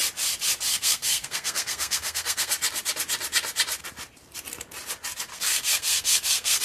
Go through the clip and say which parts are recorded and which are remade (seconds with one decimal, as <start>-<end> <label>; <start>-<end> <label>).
0.0-0.7 recorded; 0.7-2.5 remade; 2.5-5.3 recorded; 5.3-6.6 remade